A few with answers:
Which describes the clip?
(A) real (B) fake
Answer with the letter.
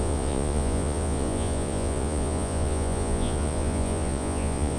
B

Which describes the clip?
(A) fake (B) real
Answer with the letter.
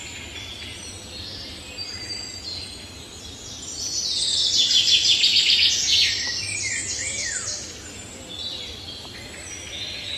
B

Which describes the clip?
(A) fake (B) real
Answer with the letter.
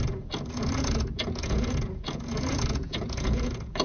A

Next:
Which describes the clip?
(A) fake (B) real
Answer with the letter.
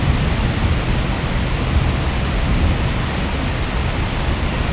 B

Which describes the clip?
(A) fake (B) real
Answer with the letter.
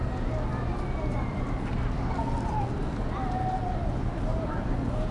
B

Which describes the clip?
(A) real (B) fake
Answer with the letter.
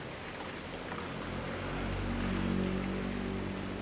A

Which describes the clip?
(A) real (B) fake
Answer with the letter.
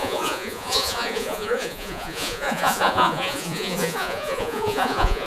B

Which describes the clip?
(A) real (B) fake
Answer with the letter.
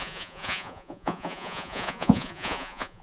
B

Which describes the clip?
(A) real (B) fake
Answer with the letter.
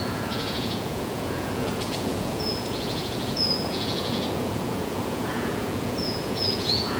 B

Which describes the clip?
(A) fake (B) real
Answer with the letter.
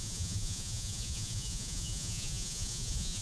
A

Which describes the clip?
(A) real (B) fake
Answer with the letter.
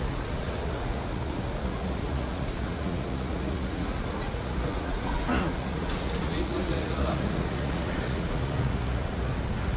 B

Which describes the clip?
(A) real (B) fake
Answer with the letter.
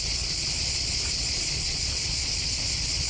B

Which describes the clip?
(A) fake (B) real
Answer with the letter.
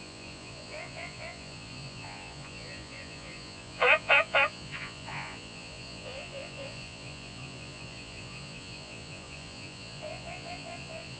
A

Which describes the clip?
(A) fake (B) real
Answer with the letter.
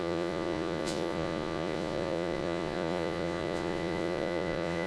A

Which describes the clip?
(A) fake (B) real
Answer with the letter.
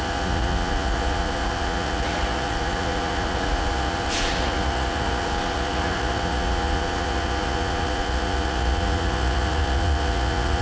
A